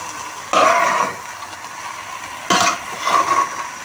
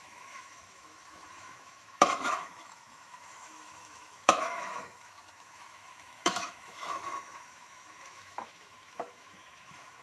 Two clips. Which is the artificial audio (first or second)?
second